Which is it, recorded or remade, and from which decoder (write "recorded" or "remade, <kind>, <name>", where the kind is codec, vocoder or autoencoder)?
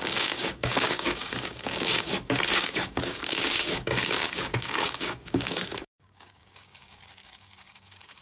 remade, codec, DAC